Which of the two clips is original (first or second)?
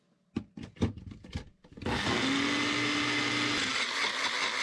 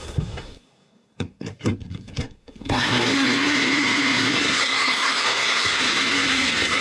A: first